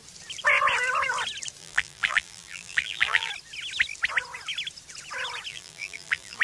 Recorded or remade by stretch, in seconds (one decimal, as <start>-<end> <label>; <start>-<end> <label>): 0.0-1.6 recorded; 1.6-3.3 remade; 3.3-5.5 recorded; 5.5-6.4 remade